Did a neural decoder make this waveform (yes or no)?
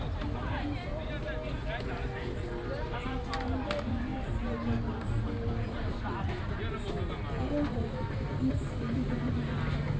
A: no